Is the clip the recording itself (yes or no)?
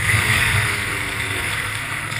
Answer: no